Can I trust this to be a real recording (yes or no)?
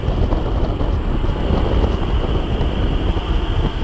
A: yes